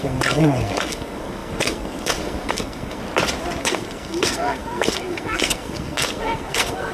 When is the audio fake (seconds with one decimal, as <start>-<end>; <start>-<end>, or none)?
0.0-3.0; 3.6-6.9